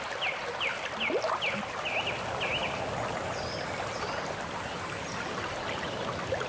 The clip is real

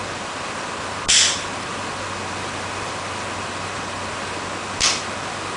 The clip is real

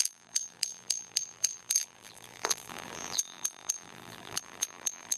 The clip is fake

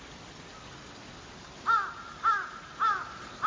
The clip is real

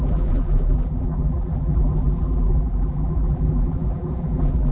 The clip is fake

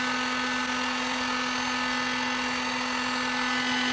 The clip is real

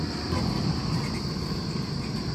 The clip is real